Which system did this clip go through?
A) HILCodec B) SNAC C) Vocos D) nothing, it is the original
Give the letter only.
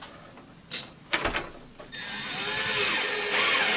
D